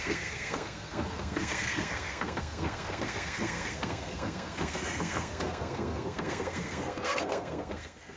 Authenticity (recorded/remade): remade